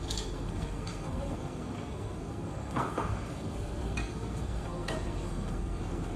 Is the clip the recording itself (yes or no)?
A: no